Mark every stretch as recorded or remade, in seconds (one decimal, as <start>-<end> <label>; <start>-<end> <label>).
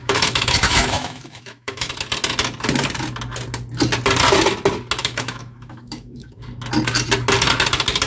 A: 0.0-1.9 remade; 1.9-5.0 recorded; 5.0-6.4 remade; 6.4-8.1 recorded